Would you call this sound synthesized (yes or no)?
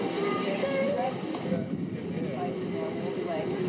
no